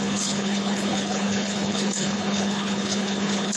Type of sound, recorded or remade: remade